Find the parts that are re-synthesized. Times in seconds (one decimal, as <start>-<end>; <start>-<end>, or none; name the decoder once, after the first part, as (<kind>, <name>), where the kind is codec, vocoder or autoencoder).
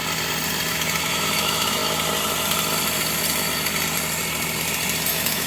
0.7-1.8 (autoencoder, DAC-VAE); 5.1-5.5